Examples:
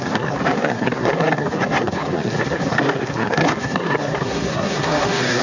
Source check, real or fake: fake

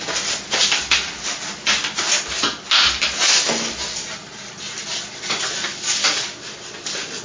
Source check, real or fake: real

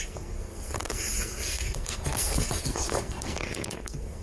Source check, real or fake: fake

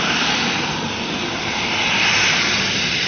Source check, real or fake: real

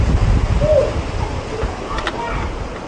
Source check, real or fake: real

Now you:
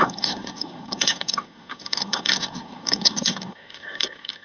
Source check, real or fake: fake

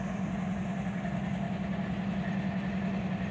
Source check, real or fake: real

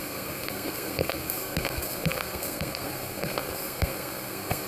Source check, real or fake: fake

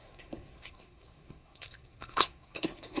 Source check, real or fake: fake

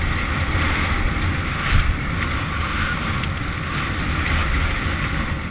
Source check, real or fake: real